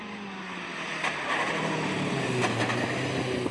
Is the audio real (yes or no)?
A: yes